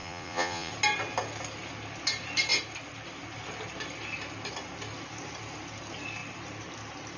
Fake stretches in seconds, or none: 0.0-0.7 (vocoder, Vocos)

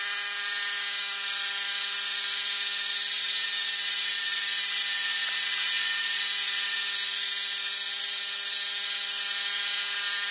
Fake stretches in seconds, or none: none

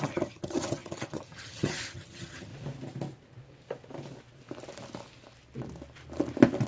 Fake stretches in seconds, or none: 0.0-2.5 (vocoder, HiFi-GAN)

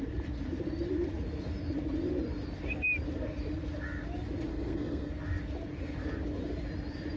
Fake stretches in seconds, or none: 4.5-5.1 (codec, SNAC)

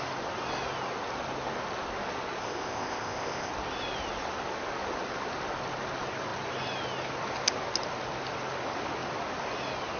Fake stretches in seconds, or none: 2.4-3.5 (codec, ZipCodec)

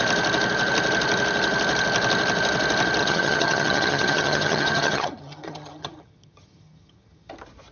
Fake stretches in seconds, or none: 3.0-7.3 (vocoder, HiFi-GAN)

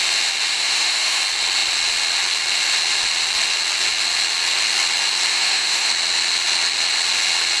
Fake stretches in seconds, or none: 0.5-1.2 (autoencoder, DAC-VAE); 5.3-5.9

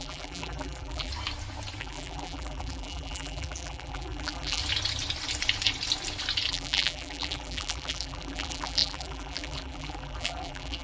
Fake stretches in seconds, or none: 0.0-1.1 (vocoder, BigVGAN v2); 1.8-4.6; 6.5-10.8